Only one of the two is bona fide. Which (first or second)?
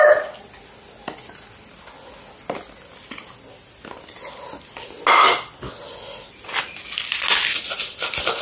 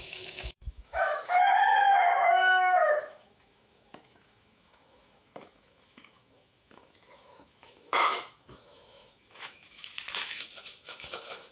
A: first